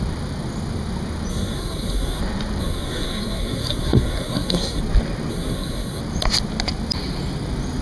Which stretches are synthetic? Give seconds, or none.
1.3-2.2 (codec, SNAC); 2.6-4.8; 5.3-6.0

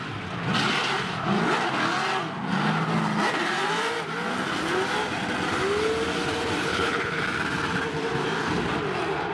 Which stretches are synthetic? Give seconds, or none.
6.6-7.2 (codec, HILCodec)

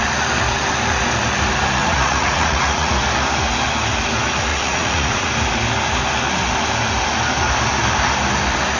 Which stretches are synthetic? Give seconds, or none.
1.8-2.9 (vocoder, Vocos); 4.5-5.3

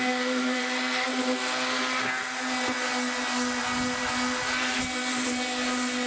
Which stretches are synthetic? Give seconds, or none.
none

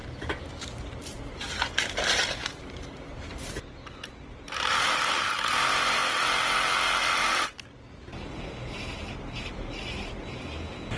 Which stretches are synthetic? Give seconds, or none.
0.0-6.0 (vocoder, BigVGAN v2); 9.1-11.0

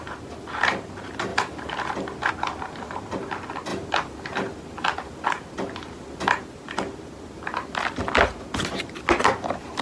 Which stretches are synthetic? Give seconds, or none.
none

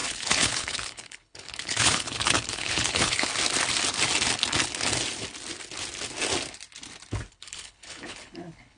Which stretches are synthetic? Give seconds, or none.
0.0-3.3 (codec, HILCodec); 7.3-8.8

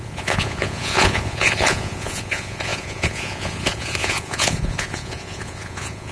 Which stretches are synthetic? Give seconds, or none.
0.0-6.1 (vocoder, Vocos)